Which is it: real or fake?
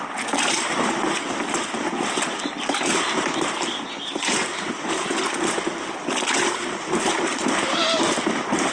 real